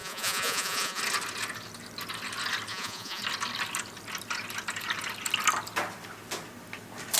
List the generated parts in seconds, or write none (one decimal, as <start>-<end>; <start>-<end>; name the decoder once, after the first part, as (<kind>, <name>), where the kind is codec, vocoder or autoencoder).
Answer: 0.0-1.0 (vocoder, Vocos); 2.7-3.2